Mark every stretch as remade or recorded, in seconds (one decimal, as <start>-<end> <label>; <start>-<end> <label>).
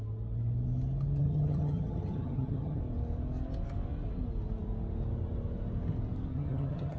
0.0-1.2 recorded; 1.2-2.8 remade; 2.8-6.3 recorded; 6.3-7.0 remade